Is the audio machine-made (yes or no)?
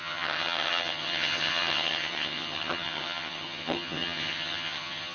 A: yes